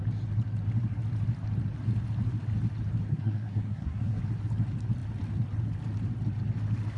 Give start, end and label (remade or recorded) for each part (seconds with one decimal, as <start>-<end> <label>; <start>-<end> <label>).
0.0-3.1 recorded; 3.1-4.2 remade; 4.2-7.0 recorded